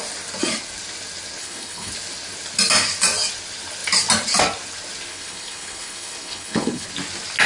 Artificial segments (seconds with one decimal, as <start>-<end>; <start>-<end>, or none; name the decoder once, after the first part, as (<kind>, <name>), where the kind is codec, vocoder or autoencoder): 1.4-1.9 (codec, HILCodec); 5.1-6.9